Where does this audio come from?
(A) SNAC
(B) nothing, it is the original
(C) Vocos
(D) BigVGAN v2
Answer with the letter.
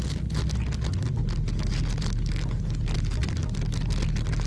B